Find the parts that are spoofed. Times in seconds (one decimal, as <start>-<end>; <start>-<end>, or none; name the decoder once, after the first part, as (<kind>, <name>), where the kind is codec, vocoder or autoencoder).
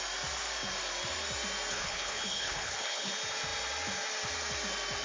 1.7-3.1 (codec, HILCodec)